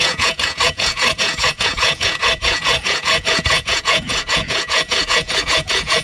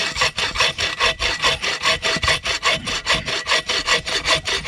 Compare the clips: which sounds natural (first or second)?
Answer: second